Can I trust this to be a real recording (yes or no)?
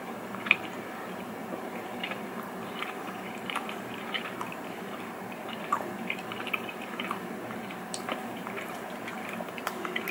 no